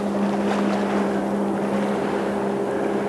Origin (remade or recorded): recorded